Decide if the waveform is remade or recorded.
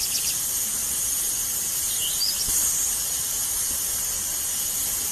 recorded